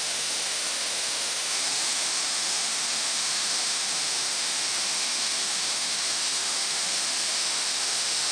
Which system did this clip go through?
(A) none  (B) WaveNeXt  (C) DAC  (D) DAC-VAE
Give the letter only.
D